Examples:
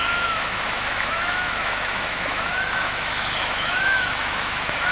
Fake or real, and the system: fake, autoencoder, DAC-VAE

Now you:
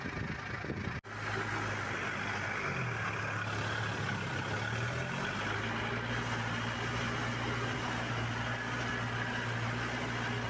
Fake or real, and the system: real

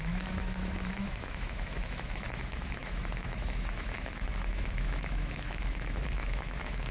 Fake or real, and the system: fake, autoencoder, DAC-VAE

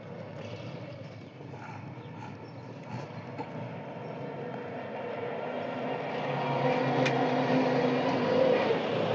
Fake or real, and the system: real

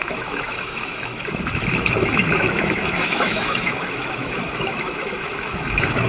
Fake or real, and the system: fake, autoencoder, DAC-VAE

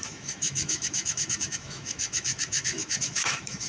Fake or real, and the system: fake, autoencoder, DAC-VAE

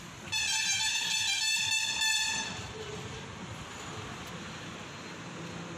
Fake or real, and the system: real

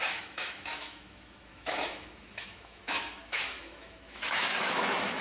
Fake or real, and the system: fake, autoencoder, DAC-VAE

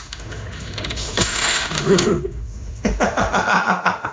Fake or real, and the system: fake, autoencoder, DAC-VAE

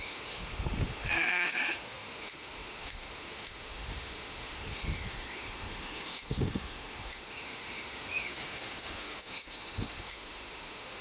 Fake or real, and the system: fake, autoencoder, DAC-VAE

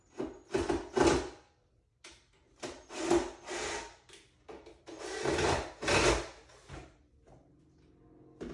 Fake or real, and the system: real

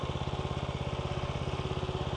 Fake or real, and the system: real